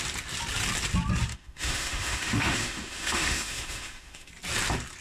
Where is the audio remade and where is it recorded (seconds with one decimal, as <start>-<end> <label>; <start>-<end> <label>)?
0.0-1.3 recorded; 1.3-4.3 remade; 4.3-5.0 recorded